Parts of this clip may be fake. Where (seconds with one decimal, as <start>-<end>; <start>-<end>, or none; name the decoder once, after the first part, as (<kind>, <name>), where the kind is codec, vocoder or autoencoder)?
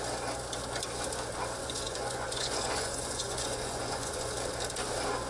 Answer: 1.6-4.3 (vocoder, Vocos)